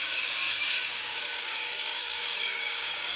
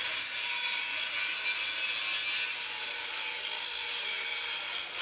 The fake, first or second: first